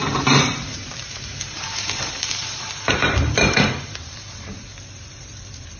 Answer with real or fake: fake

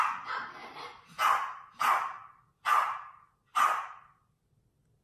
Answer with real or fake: real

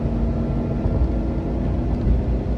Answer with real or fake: real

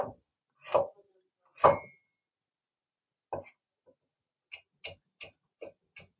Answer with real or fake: real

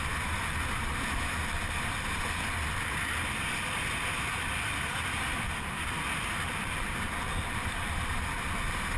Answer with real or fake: real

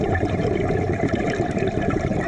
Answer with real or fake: fake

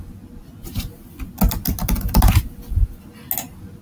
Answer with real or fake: real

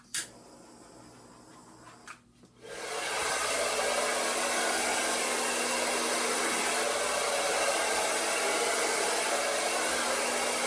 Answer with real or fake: real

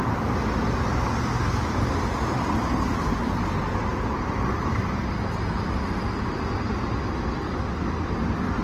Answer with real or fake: real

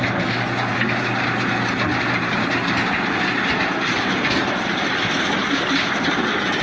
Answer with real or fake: fake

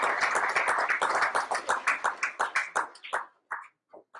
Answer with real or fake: real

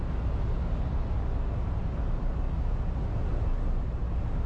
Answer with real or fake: real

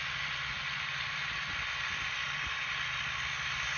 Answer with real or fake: real